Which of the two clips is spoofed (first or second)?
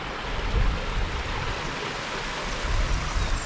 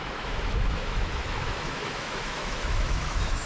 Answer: second